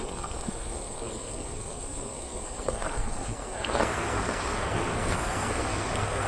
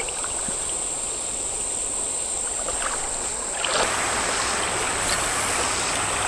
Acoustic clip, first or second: second